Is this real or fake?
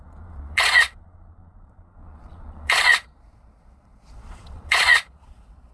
fake